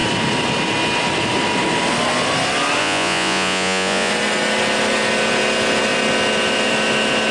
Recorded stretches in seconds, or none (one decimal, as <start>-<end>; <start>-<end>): 0.0-2.8; 4.1-7.3